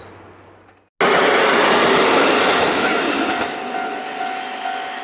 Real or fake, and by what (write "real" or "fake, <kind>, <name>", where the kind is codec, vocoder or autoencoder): real